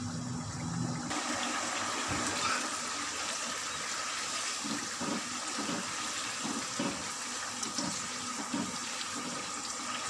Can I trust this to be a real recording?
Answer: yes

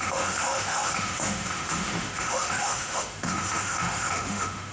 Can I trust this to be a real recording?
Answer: no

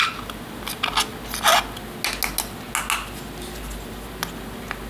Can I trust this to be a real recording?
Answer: yes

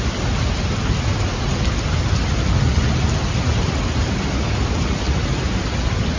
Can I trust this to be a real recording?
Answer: yes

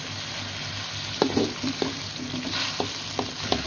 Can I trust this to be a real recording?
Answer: yes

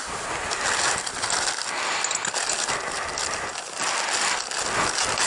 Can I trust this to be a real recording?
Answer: yes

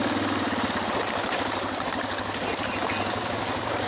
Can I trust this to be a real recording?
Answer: yes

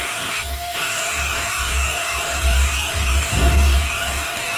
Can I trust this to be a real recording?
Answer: no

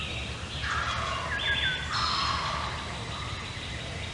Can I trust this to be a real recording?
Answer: yes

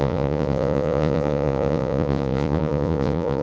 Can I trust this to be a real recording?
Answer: no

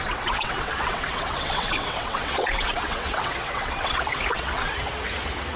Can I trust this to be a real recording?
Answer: no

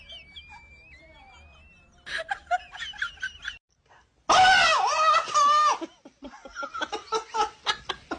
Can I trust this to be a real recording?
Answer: yes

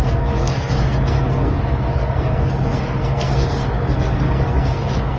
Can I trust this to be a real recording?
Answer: no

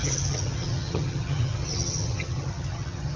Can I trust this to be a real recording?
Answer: no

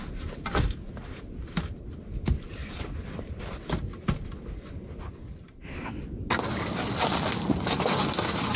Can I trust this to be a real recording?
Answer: yes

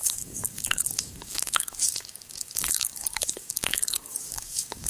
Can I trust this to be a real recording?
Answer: no